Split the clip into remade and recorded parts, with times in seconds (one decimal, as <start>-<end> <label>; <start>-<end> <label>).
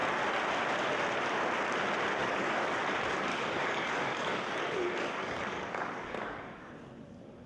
0.0-2.2 recorded; 2.2-2.8 remade; 2.8-3.3 recorded; 3.3-6.7 remade; 6.7-7.5 recorded